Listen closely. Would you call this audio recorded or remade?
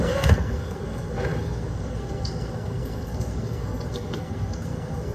remade